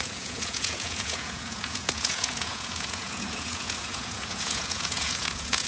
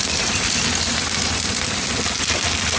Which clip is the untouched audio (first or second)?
second